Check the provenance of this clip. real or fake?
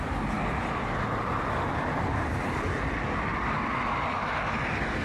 real